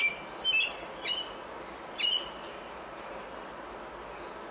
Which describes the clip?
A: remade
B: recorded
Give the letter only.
B